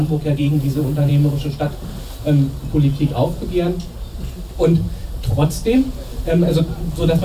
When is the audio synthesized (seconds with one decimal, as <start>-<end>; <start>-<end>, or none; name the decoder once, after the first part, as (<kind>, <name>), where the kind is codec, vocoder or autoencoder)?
0.0-1.1 (vocoder, BigVGAN v2); 4.5-7.2

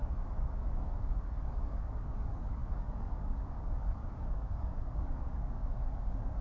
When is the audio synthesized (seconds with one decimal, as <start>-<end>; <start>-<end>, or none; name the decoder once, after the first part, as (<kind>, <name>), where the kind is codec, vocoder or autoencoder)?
0.0-6.4 (codec, DAC)

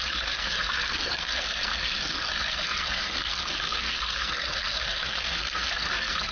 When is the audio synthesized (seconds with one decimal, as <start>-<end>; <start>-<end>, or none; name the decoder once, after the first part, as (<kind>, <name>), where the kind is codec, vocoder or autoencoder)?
0.0-6.3 (codec, SNAC)

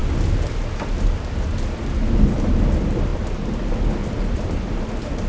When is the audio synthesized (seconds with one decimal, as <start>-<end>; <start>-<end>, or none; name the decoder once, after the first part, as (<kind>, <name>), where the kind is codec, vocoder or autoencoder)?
none

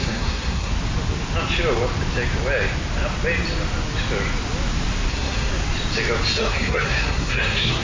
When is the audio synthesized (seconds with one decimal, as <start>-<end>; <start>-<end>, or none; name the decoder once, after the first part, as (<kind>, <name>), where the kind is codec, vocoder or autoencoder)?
0.0-0.7 (codec, SNAC); 5.1-5.5; 6.4-7.8

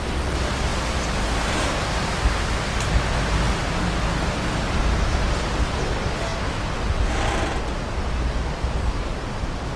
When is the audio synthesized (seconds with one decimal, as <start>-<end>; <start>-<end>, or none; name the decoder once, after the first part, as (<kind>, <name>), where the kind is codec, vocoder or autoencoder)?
none

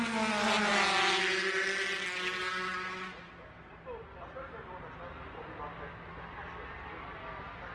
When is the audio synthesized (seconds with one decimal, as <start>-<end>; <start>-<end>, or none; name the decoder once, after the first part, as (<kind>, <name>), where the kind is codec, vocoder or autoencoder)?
none

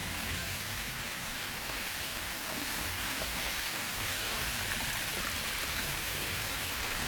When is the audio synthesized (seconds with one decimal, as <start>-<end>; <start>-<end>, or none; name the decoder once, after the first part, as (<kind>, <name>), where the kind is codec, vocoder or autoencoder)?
0.0-4.6 (codec, DAC); 5.7-7.1